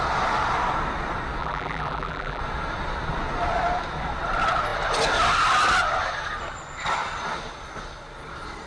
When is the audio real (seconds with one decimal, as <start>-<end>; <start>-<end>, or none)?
0.0-1.4; 2.4-8.7

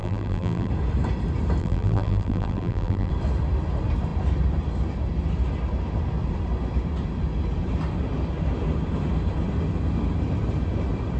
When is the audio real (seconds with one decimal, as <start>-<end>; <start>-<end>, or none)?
0.7-1.6; 3.1-11.2

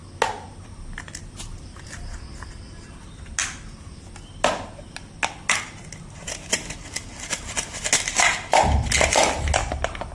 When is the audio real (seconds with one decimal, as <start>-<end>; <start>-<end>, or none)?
0.0-10.1